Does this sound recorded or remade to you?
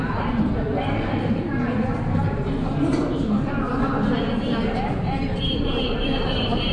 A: remade